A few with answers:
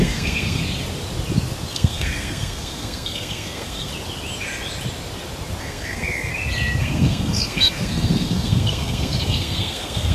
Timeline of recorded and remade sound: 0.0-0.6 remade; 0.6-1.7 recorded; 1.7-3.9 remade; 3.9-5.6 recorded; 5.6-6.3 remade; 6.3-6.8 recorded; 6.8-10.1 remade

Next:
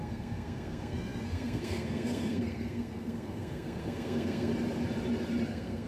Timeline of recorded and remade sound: 0.0-4.5 remade; 4.5-5.5 recorded; 5.5-5.9 remade

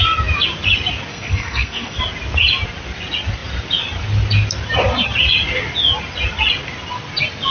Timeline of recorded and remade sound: 0.0-1.1 recorded; 1.1-2.0 remade; 2.0-7.5 recorded

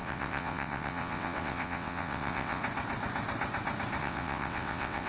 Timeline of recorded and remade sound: 0.0-2.6 remade; 2.6-4.0 recorded; 4.0-5.1 remade

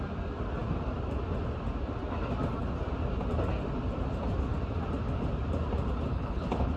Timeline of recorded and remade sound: 0.0-6.1 recorded; 6.1-6.8 remade